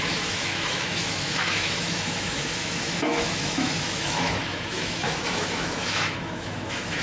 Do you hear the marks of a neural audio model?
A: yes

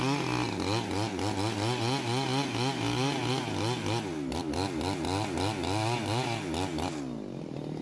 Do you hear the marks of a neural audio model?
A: no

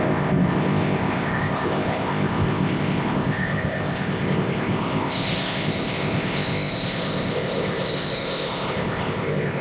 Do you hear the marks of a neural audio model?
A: yes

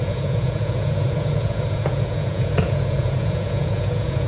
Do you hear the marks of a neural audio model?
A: yes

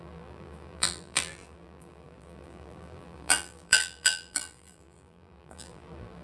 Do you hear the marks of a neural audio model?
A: yes